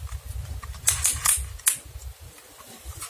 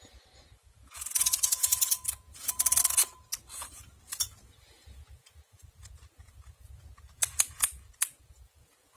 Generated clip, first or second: second